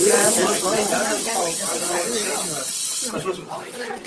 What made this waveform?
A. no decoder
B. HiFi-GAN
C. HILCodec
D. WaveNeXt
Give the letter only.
D